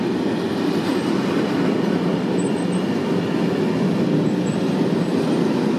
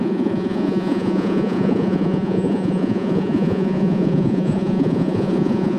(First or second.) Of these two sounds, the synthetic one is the second